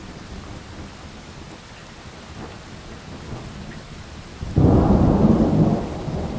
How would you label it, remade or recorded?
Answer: recorded